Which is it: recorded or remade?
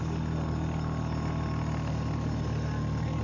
recorded